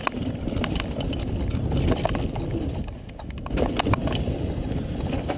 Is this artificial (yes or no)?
no